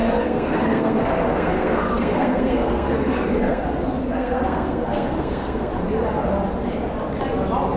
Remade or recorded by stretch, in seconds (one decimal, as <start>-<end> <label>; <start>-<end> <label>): 0.0-3.6 remade; 3.6-4.0 recorded; 4.0-5.7 remade; 5.7-7.8 recorded